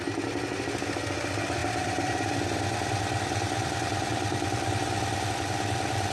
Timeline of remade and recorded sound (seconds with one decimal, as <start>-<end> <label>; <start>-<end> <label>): 0.0-1.6 recorded; 1.6-5.3 remade; 5.3-6.1 recorded